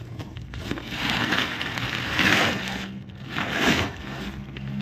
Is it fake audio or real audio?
fake